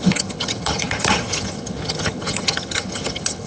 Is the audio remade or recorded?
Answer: remade